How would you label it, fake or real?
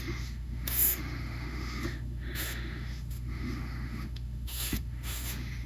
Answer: fake